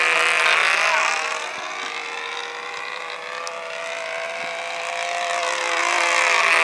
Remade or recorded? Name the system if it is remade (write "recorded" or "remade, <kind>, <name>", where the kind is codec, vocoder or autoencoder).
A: recorded